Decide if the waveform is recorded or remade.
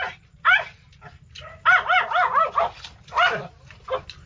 recorded